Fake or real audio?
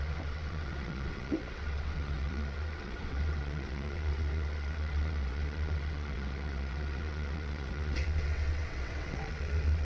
fake